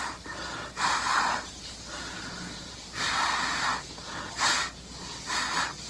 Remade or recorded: recorded